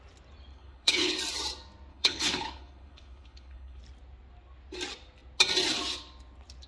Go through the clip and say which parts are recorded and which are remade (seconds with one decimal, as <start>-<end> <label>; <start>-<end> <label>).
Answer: 0.0-0.5 recorded; 0.5-1.2 remade; 1.2-1.9 recorded; 1.9-3.8 remade; 3.8-6.7 recorded